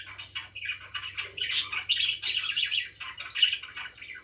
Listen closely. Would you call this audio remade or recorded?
recorded